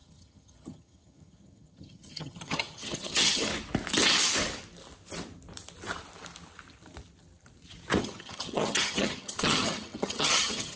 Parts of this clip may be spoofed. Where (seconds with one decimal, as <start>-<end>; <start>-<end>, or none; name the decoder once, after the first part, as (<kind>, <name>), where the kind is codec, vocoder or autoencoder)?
0.0-3.5 (vocoder, HiFi-GAN); 8.0-10.8